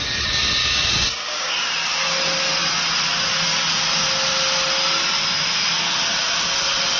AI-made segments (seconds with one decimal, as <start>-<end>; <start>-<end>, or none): 0.6-1.5